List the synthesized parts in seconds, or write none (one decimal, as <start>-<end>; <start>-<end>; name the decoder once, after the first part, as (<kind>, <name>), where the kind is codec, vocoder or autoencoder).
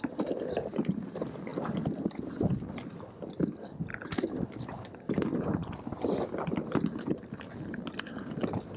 none